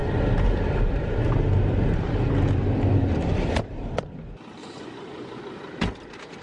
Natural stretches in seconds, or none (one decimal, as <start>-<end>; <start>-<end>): 0.0-4.6; 5.4-6.4